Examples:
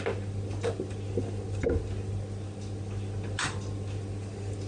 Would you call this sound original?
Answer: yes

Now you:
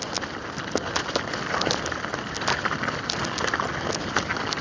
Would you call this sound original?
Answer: yes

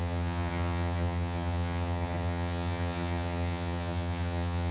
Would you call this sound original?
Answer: no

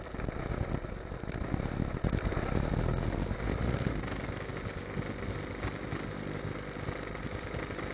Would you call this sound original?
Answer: yes